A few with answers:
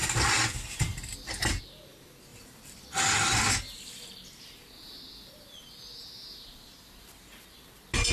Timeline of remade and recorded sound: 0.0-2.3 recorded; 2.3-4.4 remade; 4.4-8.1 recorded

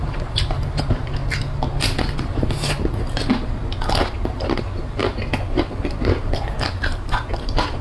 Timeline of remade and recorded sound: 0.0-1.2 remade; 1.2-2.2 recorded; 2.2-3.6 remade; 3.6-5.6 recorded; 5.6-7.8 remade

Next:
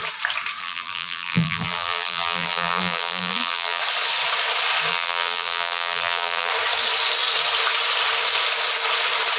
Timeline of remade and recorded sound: 0.0-0.6 recorded; 0.6-3.8 remade; 3.8-4.9 recorded; 4.9-6.5 remade; 6.5-9.4 recorded

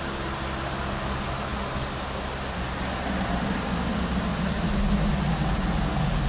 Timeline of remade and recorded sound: 0.0-6.3 recorded

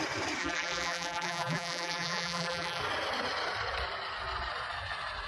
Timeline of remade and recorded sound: 0.0-0.4 recorded; 0.4-2.8 remade; 2.8-5.3 recorded